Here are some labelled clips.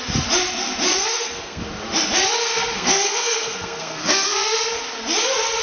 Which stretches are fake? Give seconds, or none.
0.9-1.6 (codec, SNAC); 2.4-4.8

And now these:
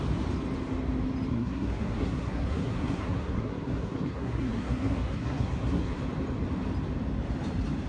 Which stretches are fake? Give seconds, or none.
1.3-6.0 (codec, SNAC)

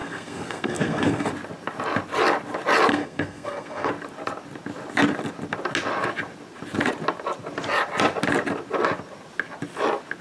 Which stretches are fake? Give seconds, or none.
0.0-1.3 (codec, SNAC); 2.9-3.9